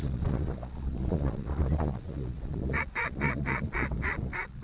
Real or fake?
fake